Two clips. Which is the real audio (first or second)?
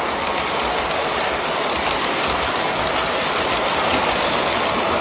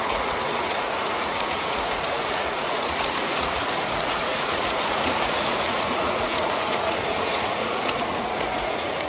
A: first